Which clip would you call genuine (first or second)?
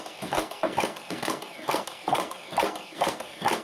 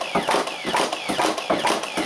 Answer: second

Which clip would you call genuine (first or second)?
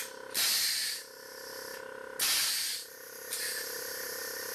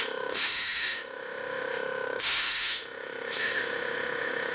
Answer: first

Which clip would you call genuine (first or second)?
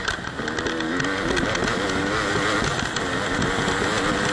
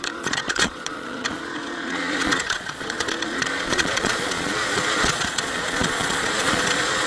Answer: first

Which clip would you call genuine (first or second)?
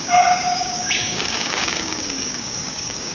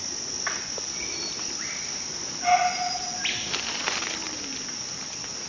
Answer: second